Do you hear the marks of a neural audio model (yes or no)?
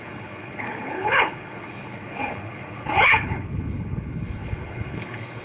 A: yes